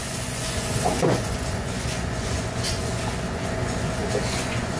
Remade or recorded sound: remade